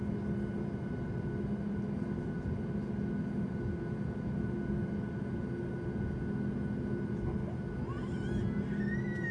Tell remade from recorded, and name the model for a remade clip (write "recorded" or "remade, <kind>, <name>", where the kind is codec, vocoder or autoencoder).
recorded